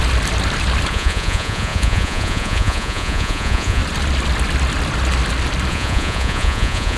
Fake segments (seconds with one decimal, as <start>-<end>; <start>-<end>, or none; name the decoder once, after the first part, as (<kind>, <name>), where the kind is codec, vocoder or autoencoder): 0.9-3.8 (vocoder, Vocos); 5.7-7.0